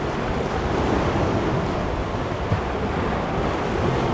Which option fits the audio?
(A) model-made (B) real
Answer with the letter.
B